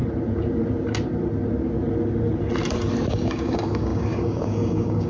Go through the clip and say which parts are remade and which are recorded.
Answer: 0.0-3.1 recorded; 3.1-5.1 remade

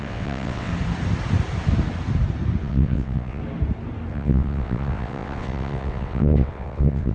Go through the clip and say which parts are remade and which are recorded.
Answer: 0.0-0.7 remade; 0.7-2.6 recorded; 2.6-3.4 remade; 3.4-4.1 recorded; 4.1-7.1 remade